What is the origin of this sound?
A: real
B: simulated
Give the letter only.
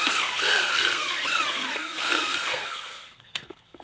B